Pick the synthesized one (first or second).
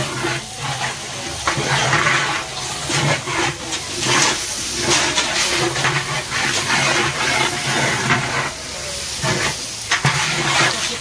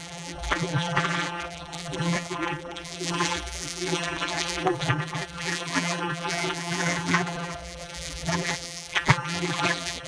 second